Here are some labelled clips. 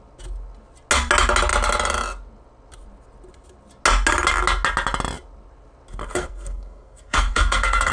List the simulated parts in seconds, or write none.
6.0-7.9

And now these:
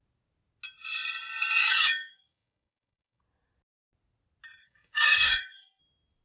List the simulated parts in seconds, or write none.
1.6-3.2; 4.6-5.8